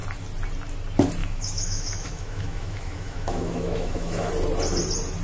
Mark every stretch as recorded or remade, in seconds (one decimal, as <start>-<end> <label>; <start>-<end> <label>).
0.0-1.2 recorded; 1.2-4.3 remade; 4.3-5.2 recorded